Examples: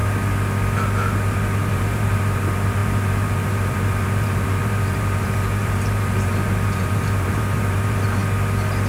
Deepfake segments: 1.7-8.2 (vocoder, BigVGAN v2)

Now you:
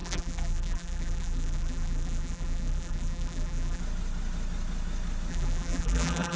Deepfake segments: 0.0-3.8 (vocoder, BigVGAN v2); 5.3-6.4